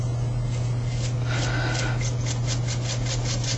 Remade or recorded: recorded